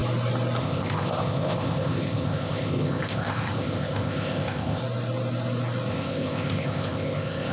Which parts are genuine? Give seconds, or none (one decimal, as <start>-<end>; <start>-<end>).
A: 0.0-0.6; 4.8-5.9